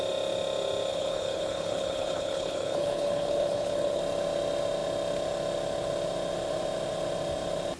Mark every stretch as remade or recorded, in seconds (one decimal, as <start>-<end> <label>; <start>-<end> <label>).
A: 0.0-0.9 recorded; 0.9-4.0 remade; 4.0-7.8 recorded